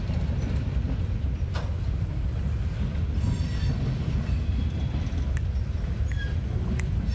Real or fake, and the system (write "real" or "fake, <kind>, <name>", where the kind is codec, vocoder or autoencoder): real